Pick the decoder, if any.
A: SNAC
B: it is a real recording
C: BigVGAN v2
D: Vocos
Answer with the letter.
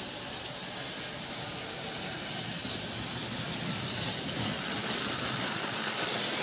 B